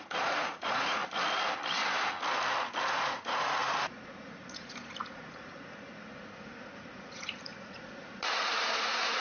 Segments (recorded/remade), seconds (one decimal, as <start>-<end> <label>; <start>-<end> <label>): 0.0-1.0 remade; 1.0-2.9 recorded; 2.9-9.2 remade